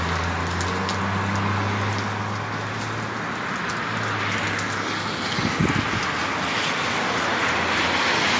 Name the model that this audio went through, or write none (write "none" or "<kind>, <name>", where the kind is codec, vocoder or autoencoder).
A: none